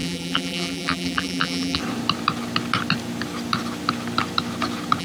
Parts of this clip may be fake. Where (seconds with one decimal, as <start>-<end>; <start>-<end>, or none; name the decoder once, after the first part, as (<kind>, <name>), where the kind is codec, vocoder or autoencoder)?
0.0-1.8 (vocoder, BigVGAN v2)